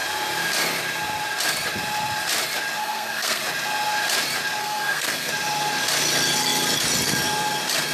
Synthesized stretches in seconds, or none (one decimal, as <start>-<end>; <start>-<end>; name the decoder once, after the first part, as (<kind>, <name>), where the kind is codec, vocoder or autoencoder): 2.8-3.4 (codec, SNAC); 4.6-5.3